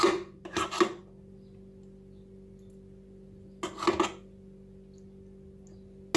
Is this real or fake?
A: real